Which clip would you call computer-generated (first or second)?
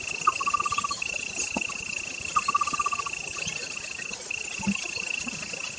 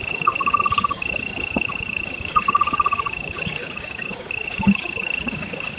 second